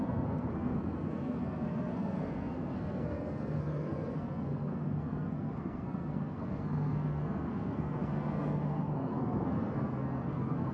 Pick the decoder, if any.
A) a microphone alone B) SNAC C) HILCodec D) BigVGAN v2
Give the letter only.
B